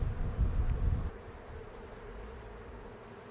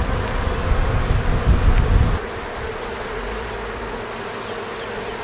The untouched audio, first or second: second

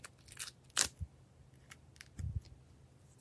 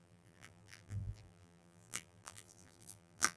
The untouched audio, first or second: first